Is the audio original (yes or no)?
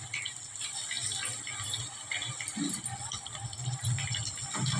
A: yes